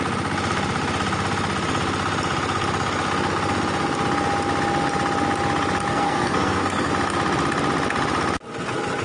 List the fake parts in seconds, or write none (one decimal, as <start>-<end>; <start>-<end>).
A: 5.9-6.9